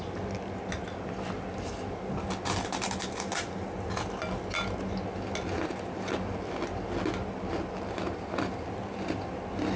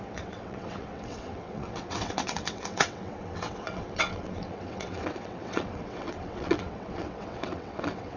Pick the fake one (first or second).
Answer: second